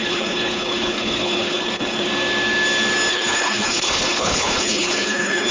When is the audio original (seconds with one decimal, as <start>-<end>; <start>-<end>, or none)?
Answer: 2.1-3.1